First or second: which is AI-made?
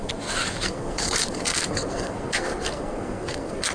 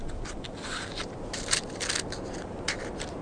first